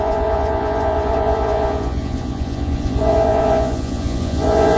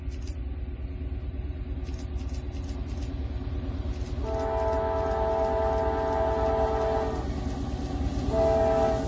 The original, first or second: second